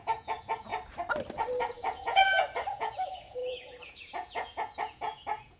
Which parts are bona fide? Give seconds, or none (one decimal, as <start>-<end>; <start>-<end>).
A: 0.7-1.6